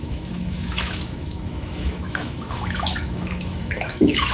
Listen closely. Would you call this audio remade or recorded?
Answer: remade